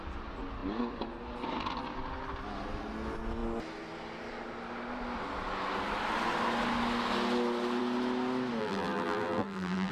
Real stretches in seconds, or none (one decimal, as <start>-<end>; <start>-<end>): 0.0-8.6